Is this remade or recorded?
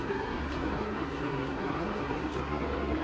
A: remade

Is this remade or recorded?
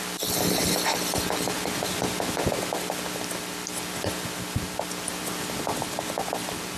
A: recorded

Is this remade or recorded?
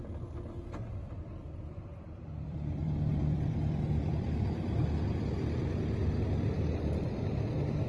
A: remade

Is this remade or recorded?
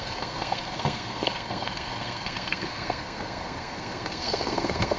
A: remade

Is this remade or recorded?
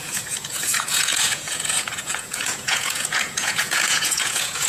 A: remade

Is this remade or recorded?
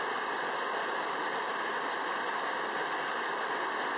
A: recorded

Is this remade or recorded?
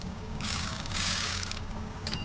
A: remade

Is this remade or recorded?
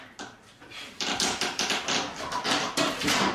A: recorded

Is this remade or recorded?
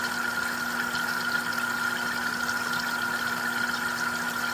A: recorded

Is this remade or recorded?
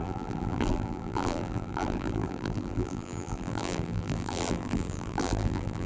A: remade